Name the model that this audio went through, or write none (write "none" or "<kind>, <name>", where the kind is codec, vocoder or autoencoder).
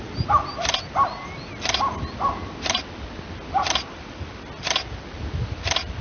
none